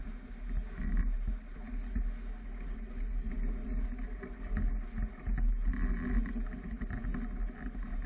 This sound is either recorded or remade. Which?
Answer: recorded